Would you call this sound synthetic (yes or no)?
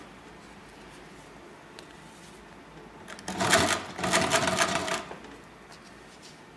no